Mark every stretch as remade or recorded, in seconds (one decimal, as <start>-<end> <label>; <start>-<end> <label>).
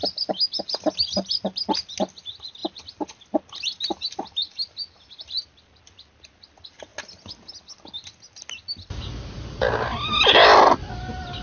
0.0-11.4 recorded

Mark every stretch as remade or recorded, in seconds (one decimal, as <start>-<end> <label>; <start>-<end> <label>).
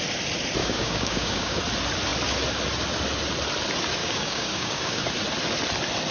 0.0-0.6 recorded; 0.6-1.6 remade; 1.6-4.0 recorded; 4.0-5.0 remade; 5.0-6.1 recorded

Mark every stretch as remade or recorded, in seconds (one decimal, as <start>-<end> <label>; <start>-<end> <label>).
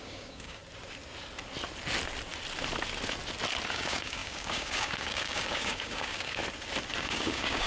0.0-0.6 remade; 0.6-3.7 recorded; 3.7-6.4 remade; 6.4-7.0 recorded; 7.0-7.7 remade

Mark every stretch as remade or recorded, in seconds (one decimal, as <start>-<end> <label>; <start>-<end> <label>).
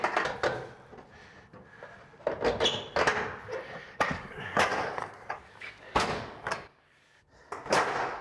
0.0-3.8 recorded; 3.8-7.2 remade; 7.2-8.2 recorded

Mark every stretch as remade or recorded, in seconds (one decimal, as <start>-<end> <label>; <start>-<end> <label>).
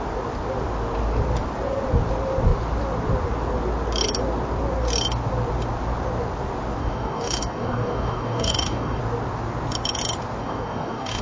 0.0-6.8 recorded; 6.8-9.0 remade; 9.0-10.4 recorded; 10.4-11.2 remade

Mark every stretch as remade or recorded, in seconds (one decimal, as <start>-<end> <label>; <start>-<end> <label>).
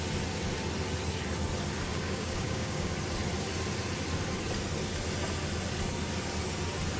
0.0-1.9 recorded; 1.9-2.9 remade; 2.9-7.0 recorded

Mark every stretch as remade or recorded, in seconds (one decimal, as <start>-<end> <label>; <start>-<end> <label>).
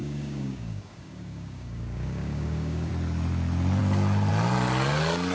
0.0-2.9 remade; 2.9-5.3 recorded